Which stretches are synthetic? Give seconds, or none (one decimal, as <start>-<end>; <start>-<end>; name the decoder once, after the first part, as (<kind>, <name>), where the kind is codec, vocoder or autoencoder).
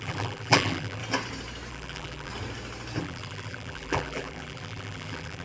0.0-1.0 (vocoder, BigVGAN v2); 1.7-2.3; 3.0-5.4